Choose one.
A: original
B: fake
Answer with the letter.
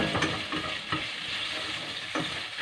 A